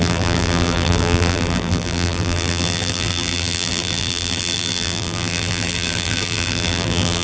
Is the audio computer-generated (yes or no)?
yes